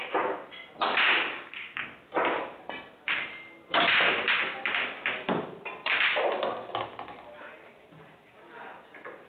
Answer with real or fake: fake